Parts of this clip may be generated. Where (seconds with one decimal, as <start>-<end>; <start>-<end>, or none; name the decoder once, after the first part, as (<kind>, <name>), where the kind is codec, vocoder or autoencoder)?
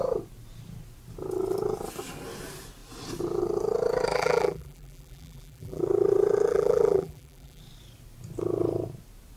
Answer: 4.1-5.8 (vocoder, BigVGAN v2); 6.5-7.6